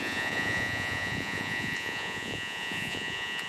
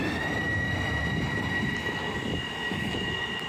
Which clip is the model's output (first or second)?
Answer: first